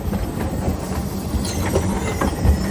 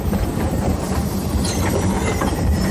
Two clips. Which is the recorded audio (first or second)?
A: first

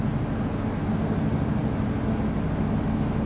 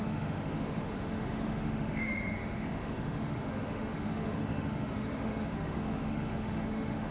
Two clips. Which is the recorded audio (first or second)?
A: first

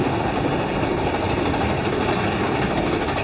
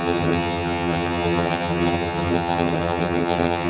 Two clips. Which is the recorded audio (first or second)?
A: first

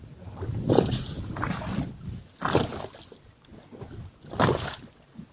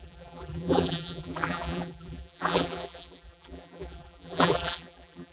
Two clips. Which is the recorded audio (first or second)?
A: first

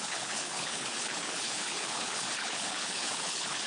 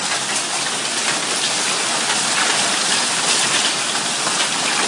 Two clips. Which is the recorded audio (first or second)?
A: second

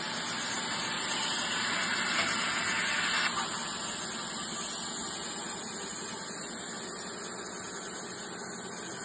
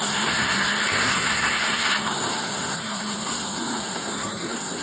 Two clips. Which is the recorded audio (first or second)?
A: first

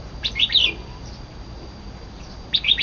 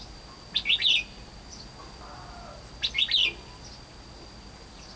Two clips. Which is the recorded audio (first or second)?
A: second